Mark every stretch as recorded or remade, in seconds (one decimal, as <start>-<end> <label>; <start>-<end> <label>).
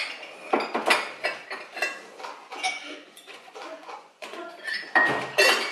0.0-2.4 recorded; 2.4-4.7 remade; 4.7-5.7 recorded